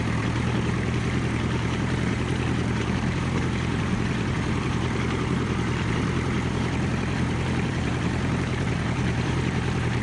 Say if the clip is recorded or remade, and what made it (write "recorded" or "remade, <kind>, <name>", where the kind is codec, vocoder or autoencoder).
remade, vocoder, BigVGAN v2